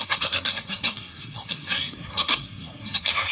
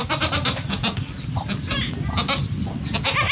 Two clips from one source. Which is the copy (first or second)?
first